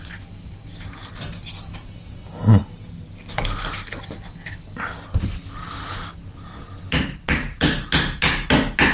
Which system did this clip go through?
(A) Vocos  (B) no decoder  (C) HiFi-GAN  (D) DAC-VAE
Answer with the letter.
B